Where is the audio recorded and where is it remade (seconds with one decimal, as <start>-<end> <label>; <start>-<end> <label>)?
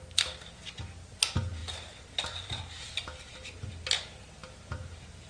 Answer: 0.0-5.3 recorded